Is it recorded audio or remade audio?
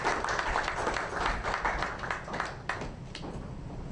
recorded